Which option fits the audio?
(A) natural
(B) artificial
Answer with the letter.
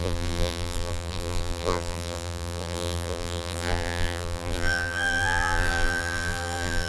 B